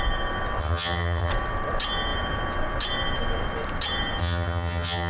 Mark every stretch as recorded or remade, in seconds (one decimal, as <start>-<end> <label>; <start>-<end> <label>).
0.0-0.6 recorded; 0.6-1.3 remade; 1.3-4.2 recorded; 4.2-5.1 remade